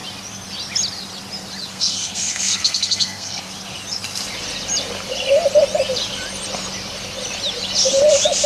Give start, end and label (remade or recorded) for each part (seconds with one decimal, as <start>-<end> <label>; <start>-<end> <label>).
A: 0.0-1.7 recorded; 1.7-3.4 remade; 3.4-8.5 recorded